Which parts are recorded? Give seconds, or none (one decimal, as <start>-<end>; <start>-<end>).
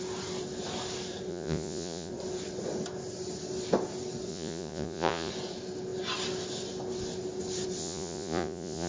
0.0-1.3; 2.1-4.3; 5.3-7.8